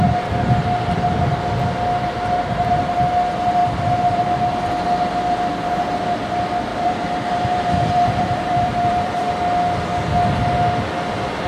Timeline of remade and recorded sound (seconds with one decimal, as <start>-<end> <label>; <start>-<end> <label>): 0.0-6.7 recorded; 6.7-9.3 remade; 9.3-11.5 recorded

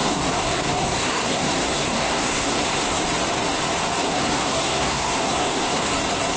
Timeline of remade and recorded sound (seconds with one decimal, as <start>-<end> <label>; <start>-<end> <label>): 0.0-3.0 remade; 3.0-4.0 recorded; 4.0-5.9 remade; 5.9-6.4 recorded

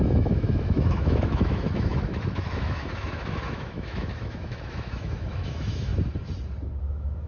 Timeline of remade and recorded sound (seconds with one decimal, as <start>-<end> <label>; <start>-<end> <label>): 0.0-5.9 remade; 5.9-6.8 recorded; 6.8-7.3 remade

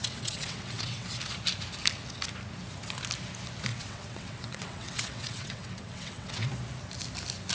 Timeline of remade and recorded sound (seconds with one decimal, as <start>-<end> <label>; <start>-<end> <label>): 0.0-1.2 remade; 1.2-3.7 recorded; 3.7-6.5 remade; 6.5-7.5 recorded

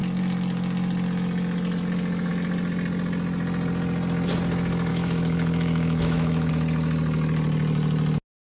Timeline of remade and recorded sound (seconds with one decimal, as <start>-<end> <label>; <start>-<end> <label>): 0.0-4.9 recorded; 4.9-6.5 remade; 6.5-8.6 recorded

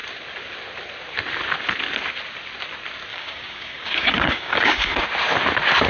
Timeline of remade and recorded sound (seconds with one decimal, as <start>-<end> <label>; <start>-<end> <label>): 0.0-3.1 recorded; 3.1-5.0 remade; 5.0-5.9 recorded